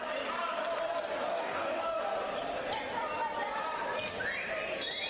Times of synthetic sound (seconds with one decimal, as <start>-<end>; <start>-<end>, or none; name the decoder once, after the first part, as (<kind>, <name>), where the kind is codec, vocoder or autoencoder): 1.3-2.0 (codec, DAC)